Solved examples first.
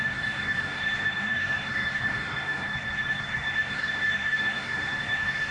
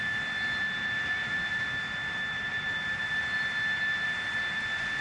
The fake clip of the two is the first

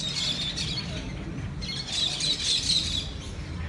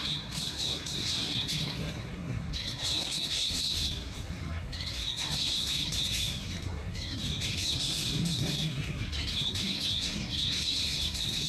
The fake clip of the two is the second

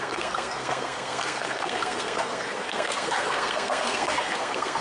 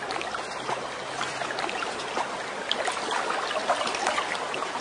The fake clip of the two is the first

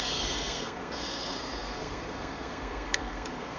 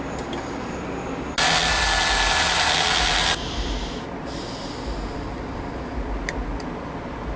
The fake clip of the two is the first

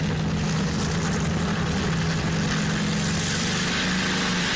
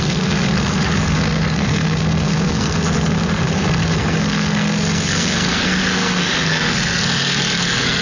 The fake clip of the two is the second